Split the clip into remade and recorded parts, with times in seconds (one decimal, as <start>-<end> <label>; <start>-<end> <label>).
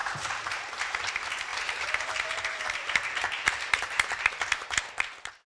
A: 0.0-1.1 remade; 1.1-1.5 recorded; 1.5-4.8 remade; 4.8-5.5 recorded